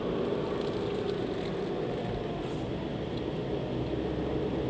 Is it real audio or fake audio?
real